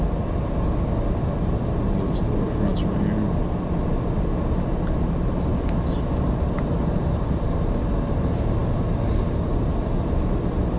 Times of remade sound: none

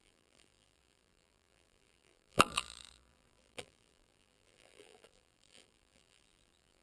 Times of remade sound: 0.0-6.8 (vocoder, BigVGAN v2)

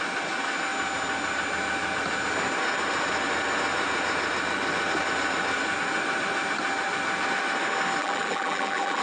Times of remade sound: 8.0-9.0 (vocoder, BigVGAN v2)

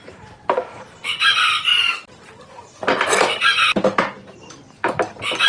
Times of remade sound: 0.0-1.7 (vocoder, BigVGAN v2); 4.0-4.8

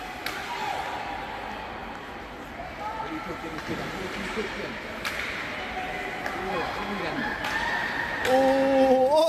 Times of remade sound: none

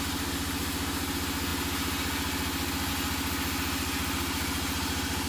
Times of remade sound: none

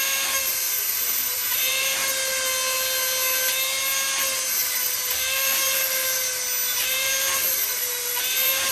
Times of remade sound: 0.0-2.0 (vocoder, BigVGAN v2); 4.5-6.0; 6.9-8.7